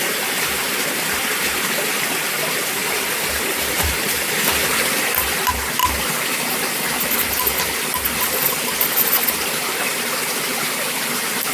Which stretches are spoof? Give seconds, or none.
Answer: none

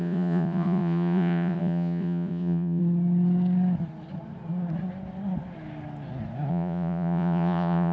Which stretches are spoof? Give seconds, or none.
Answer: 0.0-2.8; 6.5-7.9

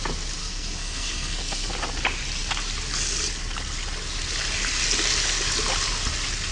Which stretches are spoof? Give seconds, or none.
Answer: 0.4-1.7

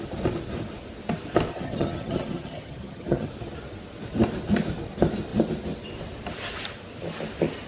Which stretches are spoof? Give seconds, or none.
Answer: 1.5-3.3

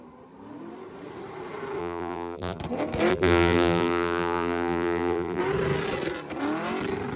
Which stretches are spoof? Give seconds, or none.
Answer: 1.8-2.6; 3.1-5.4

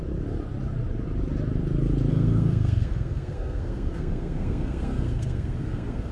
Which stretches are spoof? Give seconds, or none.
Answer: 2.1-6.1

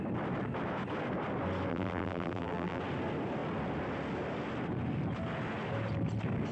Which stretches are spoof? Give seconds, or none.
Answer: 1.7-2.8

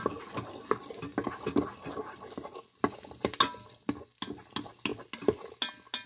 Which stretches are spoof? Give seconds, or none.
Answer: none